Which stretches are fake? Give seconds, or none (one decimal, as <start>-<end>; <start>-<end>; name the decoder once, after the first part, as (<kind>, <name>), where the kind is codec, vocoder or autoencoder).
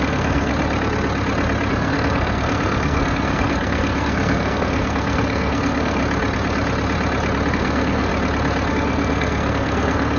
0.0-0.5 (codec, SNAC); 1.7-6.0; 7.5-8.1; 8.7-10.2